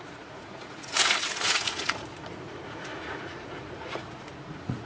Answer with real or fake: fake